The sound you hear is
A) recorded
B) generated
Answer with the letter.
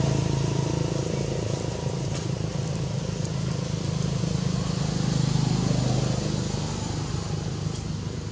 A